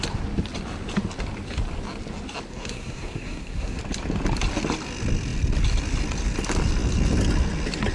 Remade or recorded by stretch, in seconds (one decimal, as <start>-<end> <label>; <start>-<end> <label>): 0.0-2.5 recorded; 2.5-3.8 remade; 3.8-7.9 recorded